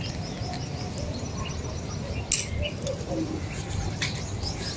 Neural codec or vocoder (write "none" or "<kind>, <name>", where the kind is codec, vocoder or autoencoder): none